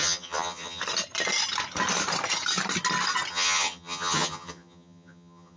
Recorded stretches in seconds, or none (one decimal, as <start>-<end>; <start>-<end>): 0.8-3.3